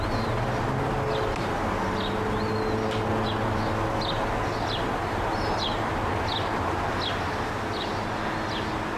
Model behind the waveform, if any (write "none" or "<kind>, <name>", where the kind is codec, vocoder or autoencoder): none